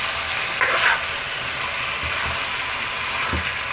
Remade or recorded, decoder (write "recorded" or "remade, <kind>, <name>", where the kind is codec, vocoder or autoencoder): recorded